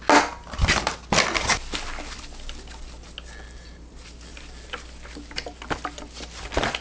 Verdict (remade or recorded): recorded